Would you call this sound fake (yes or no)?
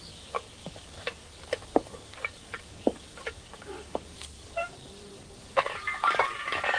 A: yes